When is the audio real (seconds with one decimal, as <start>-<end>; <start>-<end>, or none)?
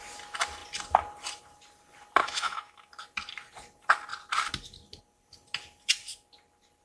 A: 0.0-2.2; 2.9-6.8